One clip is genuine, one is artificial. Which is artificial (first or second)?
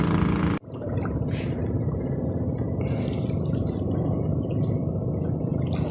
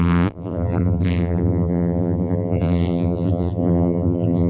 second